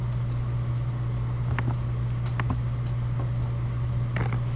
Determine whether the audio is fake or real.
real